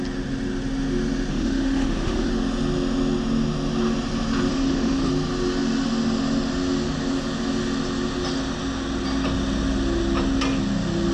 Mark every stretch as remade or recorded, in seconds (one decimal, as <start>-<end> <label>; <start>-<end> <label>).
0.0-1.3 recorded; 1.3-2.3 remade; 2.3-4.5 recorded; 4.5-5.1 remade; 5.1-11.1 recorded